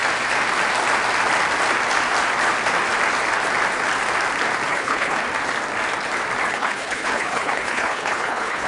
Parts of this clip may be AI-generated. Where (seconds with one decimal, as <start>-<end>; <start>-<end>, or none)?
4.7-5.2; 6.5-8.7